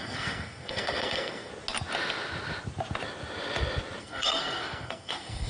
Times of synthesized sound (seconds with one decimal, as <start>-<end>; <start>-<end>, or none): 0.0-1.5; 4.0-5.5